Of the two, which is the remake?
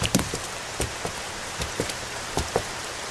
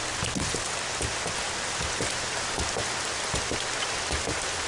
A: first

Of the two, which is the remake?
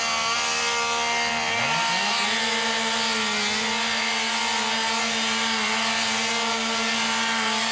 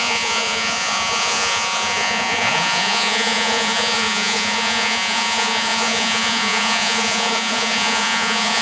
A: second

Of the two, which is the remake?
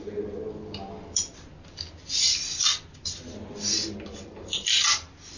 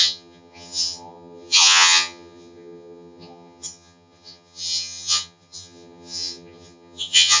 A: second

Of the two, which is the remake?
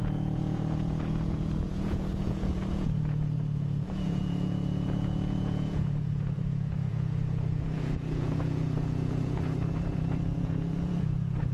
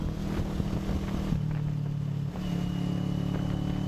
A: first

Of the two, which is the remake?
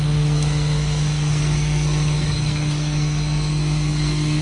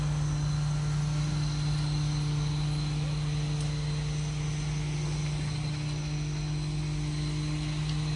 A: first